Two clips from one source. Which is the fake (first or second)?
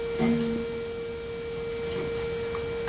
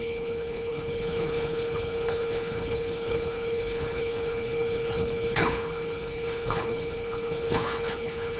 second